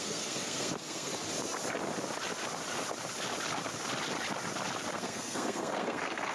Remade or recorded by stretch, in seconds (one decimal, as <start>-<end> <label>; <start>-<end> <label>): 0.0-1.1 remade; 1.1-4.9 recorded; 4.9-6.3 remade